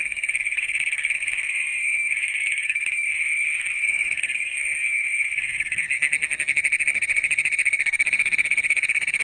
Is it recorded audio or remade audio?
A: remade